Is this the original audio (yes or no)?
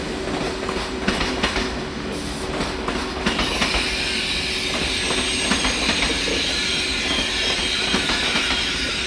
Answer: yes